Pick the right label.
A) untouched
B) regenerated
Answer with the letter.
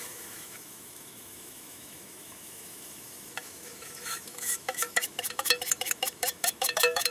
B